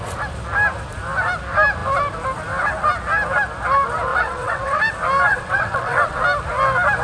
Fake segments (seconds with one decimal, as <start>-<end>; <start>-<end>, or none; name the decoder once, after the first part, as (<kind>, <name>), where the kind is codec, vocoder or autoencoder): 4.1-4.8 (vocoder, WaveNeXt); 5.3-6.2